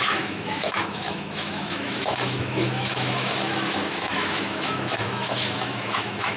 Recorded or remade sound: remade